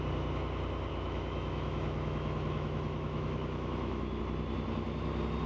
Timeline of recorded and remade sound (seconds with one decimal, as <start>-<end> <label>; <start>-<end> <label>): 0.0-0.9 recorded; 0.9-4.2 remade; 4.2-5.5 recorded